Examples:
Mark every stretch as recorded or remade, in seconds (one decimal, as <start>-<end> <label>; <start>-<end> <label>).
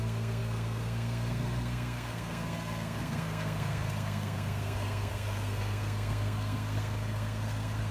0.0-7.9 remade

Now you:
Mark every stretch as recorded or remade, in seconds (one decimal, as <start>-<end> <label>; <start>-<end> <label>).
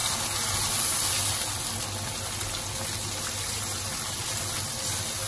0.0-5.3 recorded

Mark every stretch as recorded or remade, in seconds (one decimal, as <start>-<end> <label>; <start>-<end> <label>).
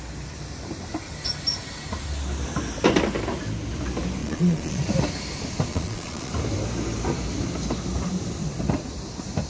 0.0-4.2 recorded; 4.2-4.9 remade; 4.9-5.7 recorded; 5.7-6.3 remade; 6.3-9.5 recorded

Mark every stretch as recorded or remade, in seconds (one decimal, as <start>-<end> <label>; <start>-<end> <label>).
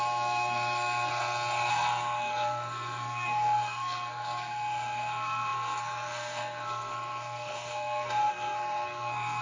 0.0-1.1 remade; 1.1-1.7 recorded; 1.7-9.4 remade